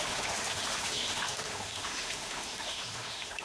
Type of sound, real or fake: fake